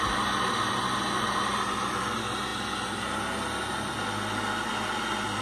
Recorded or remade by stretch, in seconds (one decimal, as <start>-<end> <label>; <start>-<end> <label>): 0.0-5.4 recorded